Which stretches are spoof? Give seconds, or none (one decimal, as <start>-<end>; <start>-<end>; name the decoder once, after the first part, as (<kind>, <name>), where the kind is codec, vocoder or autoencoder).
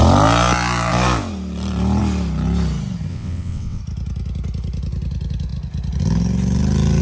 3.1-3.8 (vocoder, WaveNeXt)